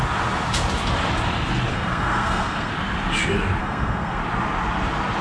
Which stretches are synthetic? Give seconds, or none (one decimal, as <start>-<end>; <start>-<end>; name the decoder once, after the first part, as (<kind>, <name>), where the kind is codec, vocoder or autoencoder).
1.7-2.7 (codec, SNAC); 3.6-4.2